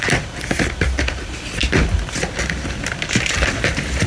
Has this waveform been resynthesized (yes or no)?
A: no